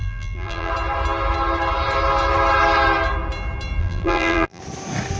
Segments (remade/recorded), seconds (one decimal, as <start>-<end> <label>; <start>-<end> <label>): 0.0-0.7 remade; 0.7-3.8 recorded; 3.8-4.6 remade; 4.6-5.2 recorded